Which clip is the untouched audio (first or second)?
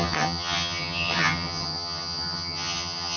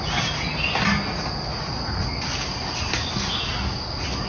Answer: second